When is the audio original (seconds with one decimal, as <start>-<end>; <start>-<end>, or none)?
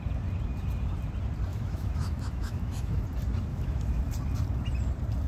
0.0-1.5; 3.0-3.5; 4.0-5.3